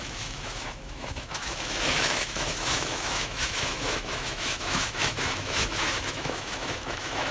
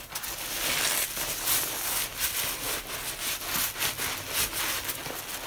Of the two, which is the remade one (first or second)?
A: first